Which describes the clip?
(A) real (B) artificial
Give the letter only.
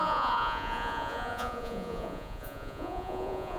B